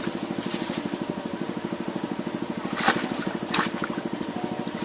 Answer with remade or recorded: recorded